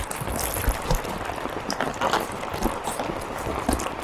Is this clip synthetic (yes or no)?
no